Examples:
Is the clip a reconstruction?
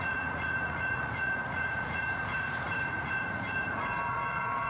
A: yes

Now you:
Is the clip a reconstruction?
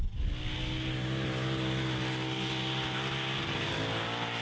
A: no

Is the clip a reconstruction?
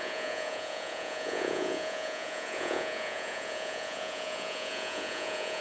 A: yes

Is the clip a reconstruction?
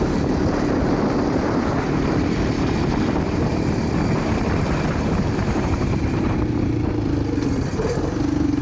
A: no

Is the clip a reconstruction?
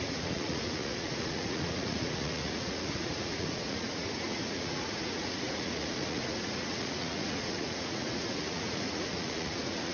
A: yes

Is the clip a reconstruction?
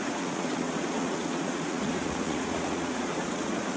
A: yes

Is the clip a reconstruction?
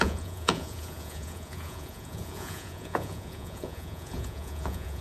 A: yes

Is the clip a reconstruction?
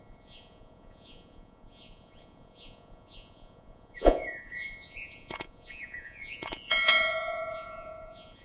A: yes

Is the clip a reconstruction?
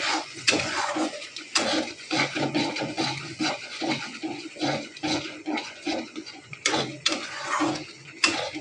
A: yes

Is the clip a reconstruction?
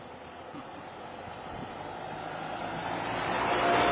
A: no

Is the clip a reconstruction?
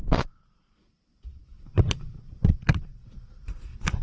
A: yes